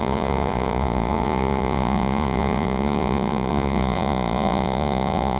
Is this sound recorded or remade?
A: remade